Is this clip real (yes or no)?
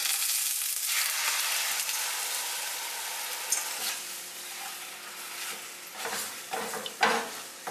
yes